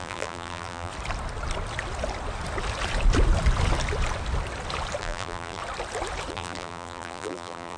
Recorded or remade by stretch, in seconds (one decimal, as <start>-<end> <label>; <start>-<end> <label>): 0.0-0.9 remade; 0.9-5.0 recorded; 5.0-5.6 remade; 5.6-6.3 recorded; 6.3-7.8 remade